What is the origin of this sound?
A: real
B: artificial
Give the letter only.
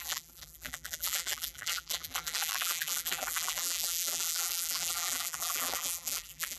B